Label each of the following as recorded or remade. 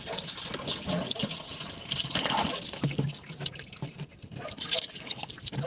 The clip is recorded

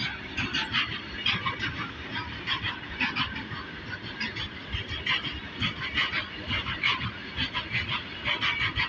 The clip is recorded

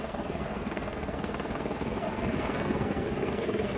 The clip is remade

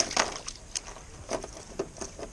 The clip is recorded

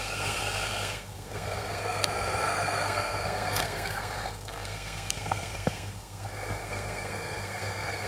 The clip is remade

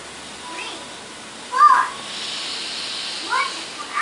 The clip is recorded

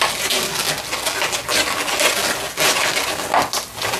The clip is recorded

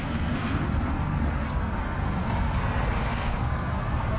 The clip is remade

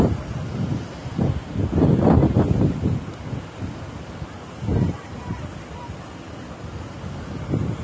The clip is recorded